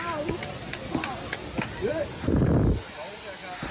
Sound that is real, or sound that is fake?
real